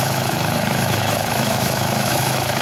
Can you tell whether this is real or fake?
fake